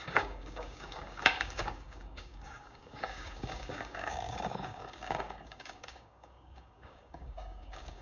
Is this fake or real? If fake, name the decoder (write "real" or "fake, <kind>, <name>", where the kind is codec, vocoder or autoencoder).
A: fake, codec, DAC